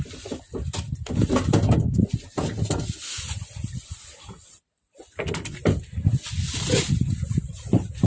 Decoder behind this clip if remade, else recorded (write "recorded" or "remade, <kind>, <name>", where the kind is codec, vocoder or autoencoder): recorded